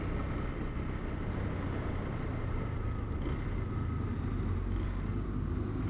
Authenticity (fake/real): real